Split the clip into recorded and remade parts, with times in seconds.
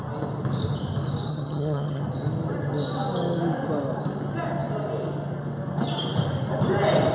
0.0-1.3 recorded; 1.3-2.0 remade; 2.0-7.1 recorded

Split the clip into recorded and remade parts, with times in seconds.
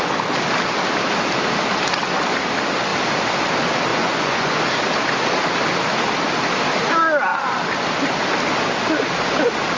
0.0-3.9 recorded; 3.9-4.6 remade; 4.6-9.8 recorded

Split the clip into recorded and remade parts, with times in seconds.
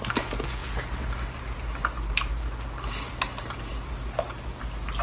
0.0-5.0 recorded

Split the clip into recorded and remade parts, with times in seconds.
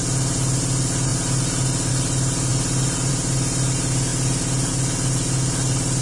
0.0-6.0 recorded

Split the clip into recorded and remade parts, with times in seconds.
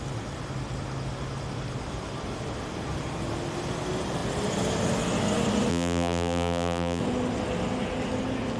0.0-5.7 recorded; 5.7-7.0 remade; 7.0-8.6 recorded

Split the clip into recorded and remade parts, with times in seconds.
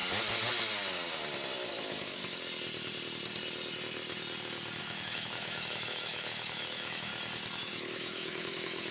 0.0-1.7 recorded; 1.7-2.2 remade; 2.2-4.8 recorded; 4.8-7.1 remade; 7.1-7.6 recorded; 7.6-8.9 remade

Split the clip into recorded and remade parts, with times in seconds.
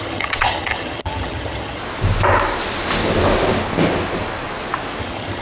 0.0-1.8 remade; 1.8-5.0 recorded; 5.0-5.4 remade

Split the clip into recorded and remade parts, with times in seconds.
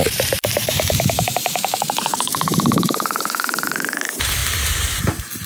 0.0-5.5 remade